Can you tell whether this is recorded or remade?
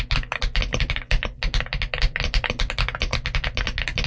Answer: recorded